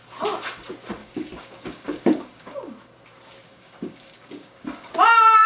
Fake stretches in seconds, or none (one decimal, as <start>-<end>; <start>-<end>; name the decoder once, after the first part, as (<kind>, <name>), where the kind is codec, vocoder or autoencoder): 1.0-2.7 (codec, DAC); 3.5-4.9